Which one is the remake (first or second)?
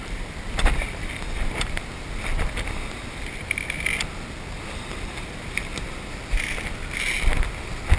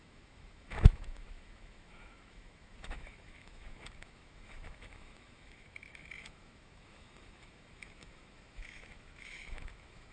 second